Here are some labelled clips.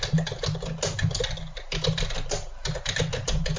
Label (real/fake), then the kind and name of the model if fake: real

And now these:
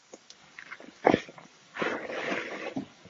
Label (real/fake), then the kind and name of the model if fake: fake, codec, DAC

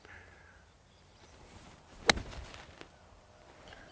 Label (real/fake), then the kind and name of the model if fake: real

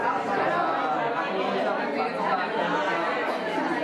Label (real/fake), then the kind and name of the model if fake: real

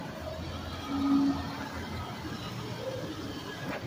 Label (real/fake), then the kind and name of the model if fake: real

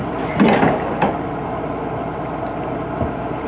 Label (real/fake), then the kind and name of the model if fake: real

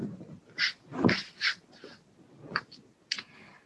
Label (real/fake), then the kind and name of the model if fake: real